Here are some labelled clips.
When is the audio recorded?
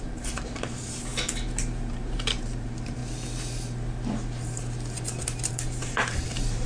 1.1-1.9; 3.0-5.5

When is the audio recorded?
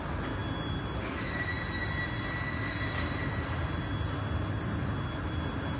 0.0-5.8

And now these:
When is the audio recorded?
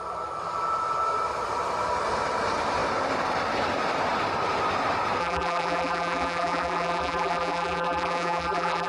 0.0-5.2